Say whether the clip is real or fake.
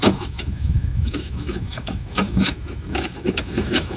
fake